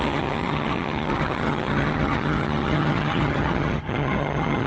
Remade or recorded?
remade